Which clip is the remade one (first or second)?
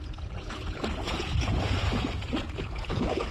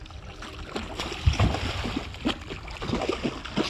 first